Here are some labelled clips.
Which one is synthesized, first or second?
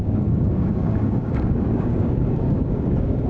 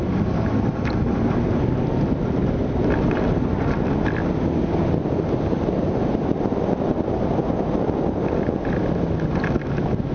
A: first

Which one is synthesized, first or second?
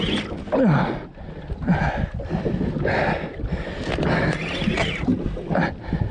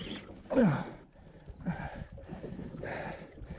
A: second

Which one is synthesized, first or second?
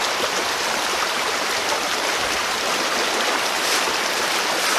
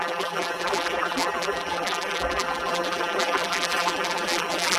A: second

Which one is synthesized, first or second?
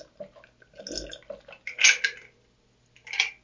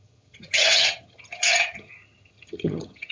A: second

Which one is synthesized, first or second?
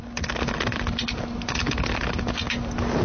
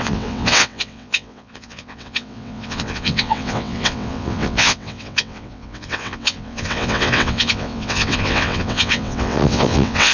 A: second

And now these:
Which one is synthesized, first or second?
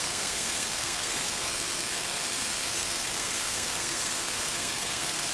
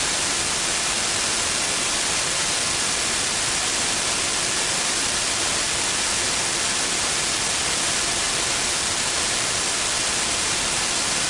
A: first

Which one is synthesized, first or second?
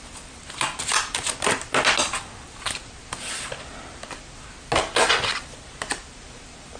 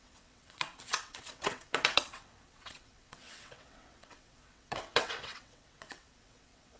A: second